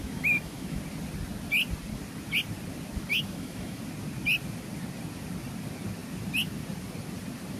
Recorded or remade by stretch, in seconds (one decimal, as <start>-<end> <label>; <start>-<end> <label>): 0.0-0.8 remade; 0.8-3.1 recorded; 3.1-3.8 remade; 3.8-7.6 recorded

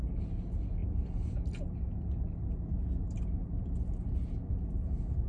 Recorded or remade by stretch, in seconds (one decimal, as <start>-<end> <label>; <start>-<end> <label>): 0.0-5.3 recorded

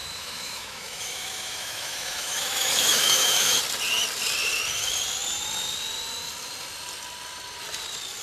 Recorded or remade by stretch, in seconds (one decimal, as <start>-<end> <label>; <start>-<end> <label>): 0.0-3.6 remade; 3.6-8.2 recorded

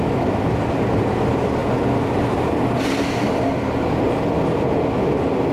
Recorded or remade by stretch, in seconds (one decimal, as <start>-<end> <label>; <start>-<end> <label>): 0.0-5.5 recorded

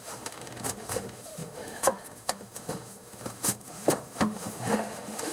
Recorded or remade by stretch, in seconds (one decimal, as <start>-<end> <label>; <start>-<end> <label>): 0.0-5.3 remade

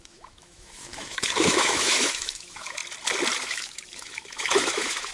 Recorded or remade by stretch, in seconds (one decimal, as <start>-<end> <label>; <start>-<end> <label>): 0.0-2.8 remade; 2.8-3.4 recorded; 3.4-5.1 remade

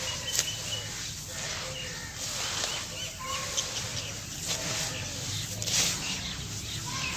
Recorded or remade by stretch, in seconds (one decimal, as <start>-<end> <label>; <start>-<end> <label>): 0.0-7.2 recorded

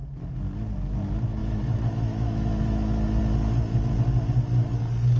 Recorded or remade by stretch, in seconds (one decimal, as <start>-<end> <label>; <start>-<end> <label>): 0.0-1.4 recorded; 1.4-3.2 remade; 3.2-5.2 recorded